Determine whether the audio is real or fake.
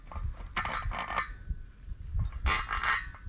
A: real